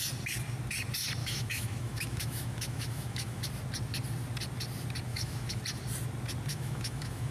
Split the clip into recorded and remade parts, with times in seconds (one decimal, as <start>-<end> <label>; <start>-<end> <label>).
0.0-1.2 recorded; 1.2-3.5 remade; 3.5-5.1 recorded; 5.1-5.6 remade; 5.6-6.5 recorded; 6.5-7.3 remade